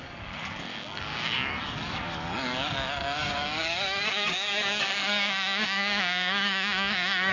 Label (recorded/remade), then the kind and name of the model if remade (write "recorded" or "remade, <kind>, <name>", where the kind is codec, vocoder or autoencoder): remade, codec, DAC